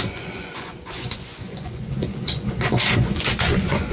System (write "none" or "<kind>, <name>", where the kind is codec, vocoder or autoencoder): vocoder, Vocos